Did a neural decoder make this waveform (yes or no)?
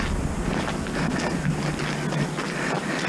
no